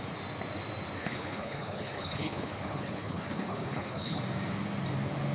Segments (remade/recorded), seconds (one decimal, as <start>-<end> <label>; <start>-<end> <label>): 0.0-1.0 recorded; 1.0-4.2 remade; 4.2-5.3 recorded